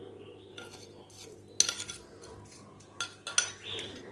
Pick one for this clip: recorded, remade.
recorded